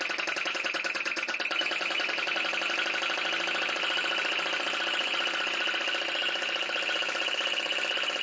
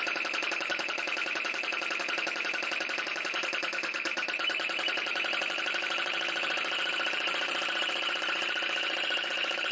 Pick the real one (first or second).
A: first